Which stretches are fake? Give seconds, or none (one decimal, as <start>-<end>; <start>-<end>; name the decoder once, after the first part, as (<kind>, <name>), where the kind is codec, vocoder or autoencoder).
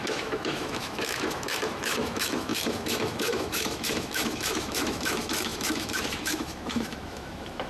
0.0-7.7 (autoencoder, DAC-VAE)